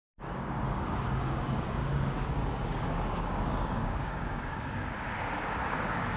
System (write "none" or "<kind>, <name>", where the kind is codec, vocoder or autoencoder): codec, DAC